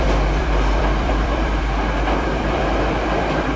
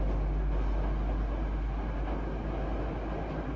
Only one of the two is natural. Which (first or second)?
second